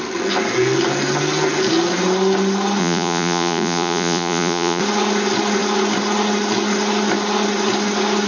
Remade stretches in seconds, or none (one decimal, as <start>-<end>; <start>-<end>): 2.8-4.8